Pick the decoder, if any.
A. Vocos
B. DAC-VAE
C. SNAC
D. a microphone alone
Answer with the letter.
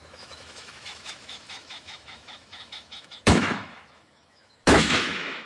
B